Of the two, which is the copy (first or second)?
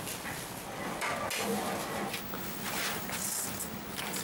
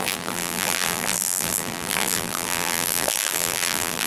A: second